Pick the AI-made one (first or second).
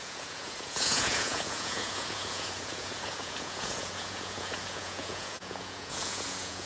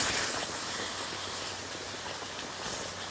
first